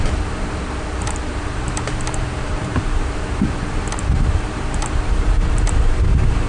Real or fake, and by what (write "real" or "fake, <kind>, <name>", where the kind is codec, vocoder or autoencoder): fake, vocoder, BigVGAN v2